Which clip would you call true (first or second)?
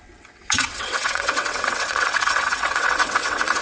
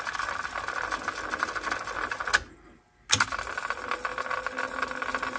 second